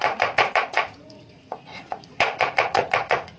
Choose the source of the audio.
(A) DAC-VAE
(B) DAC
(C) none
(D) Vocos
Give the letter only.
D